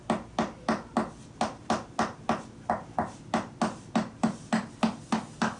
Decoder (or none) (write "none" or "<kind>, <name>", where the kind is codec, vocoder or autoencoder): none